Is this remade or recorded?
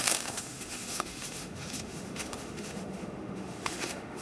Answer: remade